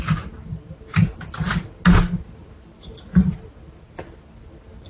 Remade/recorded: recorded